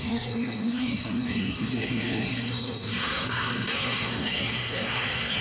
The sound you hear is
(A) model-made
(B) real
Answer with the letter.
A